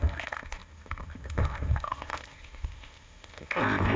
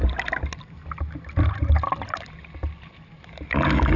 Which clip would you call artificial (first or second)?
first